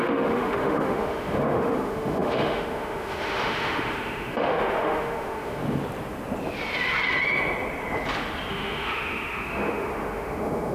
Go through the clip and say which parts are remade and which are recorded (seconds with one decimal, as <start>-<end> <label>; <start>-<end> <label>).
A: 0.0-5.6 remade; 5.6-8.5 recorded; 8.5-10.7 remade